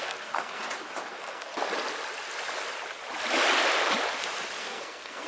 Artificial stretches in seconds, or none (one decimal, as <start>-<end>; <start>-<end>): 0.0-0.6; 1.1-1.5; 4.6-5.3